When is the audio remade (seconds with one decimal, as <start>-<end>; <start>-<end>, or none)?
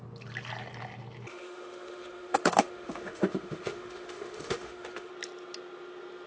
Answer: 1.3-5.1